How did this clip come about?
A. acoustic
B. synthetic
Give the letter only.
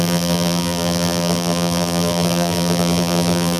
B